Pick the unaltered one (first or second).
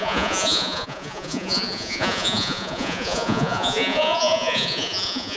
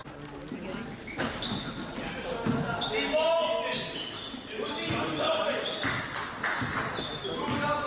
second